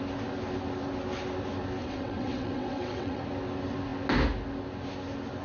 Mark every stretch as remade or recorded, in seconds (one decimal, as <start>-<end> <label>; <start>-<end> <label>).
0.0-1.8 recorded; 1.8-3.2 remade; 3.2-5.4 recorded